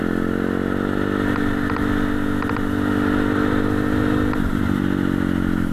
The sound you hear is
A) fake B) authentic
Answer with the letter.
B